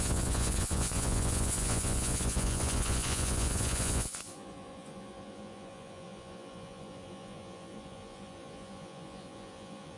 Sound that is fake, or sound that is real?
fake